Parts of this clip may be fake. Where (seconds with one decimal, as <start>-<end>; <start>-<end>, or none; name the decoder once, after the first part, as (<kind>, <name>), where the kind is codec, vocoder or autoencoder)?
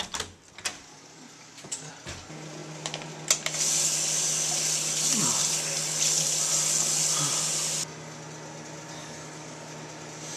0.9-1.9 (codec, DAC); 9.0-9.7